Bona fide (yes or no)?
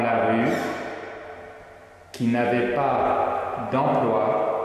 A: yes